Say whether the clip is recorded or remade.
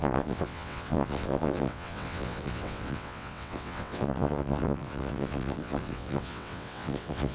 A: remade